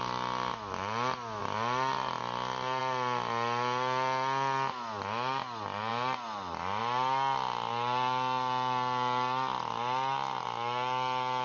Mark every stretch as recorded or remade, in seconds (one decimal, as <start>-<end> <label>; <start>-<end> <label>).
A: 0.0-11.4 recorded